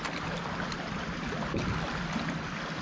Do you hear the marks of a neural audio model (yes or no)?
no